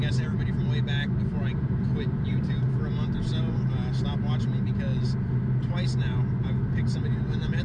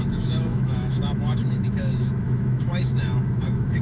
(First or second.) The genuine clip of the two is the first